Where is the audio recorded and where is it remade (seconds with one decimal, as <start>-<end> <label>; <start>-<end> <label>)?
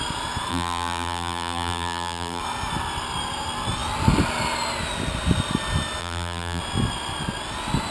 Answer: 0.0-0.5 recorded; 0.5-2.4 remade; 2.4-6.0 recorded; 6.0-6.6 remade; 6.6-7.9 recorded